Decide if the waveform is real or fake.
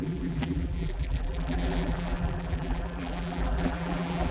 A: fake